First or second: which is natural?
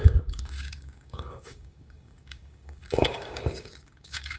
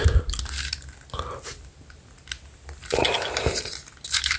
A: second